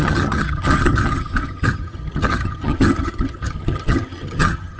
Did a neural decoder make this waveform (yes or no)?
yes